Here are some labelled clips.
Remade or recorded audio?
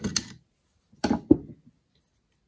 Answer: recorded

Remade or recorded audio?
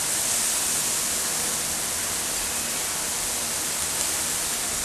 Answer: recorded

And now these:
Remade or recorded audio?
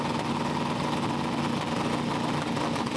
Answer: recorded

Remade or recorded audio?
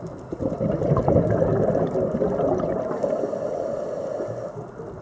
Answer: recorded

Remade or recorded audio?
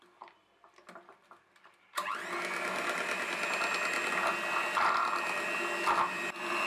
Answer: recorded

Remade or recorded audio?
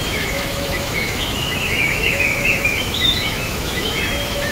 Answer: remade